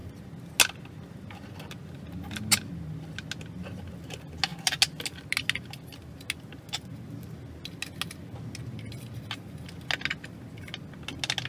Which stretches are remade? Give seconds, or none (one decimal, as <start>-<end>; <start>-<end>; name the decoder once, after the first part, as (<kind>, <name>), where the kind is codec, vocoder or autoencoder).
none